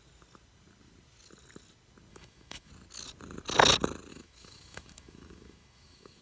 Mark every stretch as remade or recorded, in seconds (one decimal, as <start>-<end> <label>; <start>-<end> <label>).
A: 0.0-2.1 recorded; 2.1-2.7 remade; 2.7-4.1 recorded; 4.1-6.2 remade